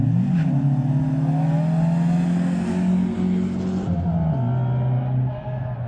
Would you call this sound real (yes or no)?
yes